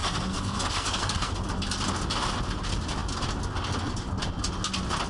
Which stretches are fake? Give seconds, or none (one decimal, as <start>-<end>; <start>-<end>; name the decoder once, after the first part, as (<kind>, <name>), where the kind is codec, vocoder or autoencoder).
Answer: 0.0-1.3 (codec, SNAC)